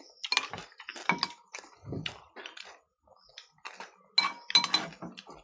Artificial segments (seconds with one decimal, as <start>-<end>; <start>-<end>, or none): none